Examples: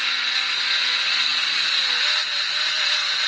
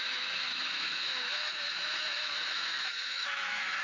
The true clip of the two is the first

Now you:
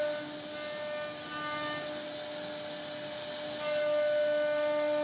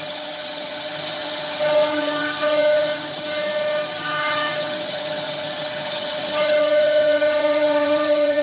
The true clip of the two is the first